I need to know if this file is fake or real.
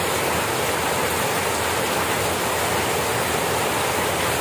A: real